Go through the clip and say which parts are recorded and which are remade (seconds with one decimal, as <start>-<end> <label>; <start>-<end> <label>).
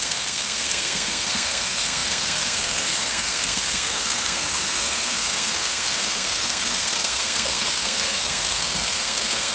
0.0-9.5 remade